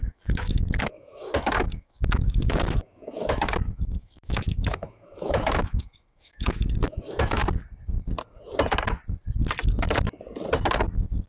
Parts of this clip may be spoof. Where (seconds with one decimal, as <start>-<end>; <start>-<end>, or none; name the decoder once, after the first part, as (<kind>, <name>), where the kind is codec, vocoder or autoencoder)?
0.0-7.4 (autoencoder, DAC-VAE)